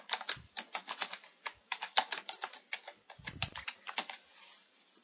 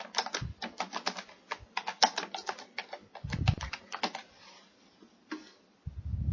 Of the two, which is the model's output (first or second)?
first